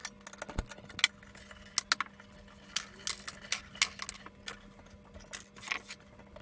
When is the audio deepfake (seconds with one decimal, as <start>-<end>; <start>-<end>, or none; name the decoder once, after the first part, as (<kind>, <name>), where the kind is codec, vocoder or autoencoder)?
none